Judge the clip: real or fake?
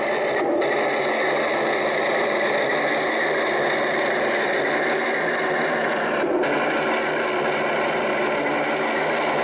real